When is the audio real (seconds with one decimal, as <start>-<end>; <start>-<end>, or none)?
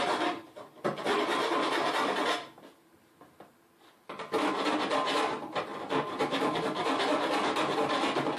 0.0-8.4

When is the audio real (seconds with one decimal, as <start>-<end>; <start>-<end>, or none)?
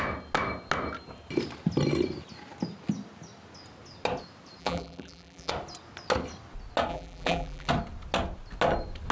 0.0-4.6; 5.5-6.9; 7.7-9.1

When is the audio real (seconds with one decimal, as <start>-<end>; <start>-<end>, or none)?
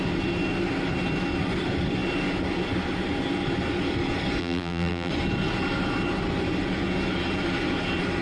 0.0-4.4; 5.1-8.2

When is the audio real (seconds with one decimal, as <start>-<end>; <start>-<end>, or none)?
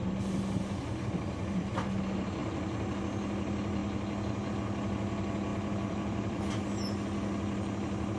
0.0-5.5; 6.4-8.2